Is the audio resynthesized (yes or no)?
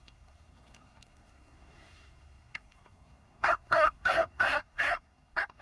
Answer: yes